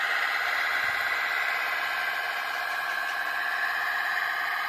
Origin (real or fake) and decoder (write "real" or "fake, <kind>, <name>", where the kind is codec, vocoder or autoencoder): real